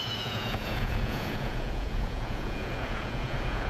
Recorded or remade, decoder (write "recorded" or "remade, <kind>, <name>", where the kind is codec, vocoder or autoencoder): remade, vocoder, Vocos